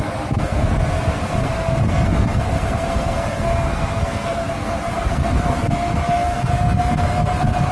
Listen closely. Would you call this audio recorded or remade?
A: remade